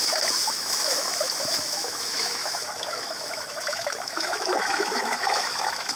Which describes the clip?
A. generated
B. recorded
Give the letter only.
A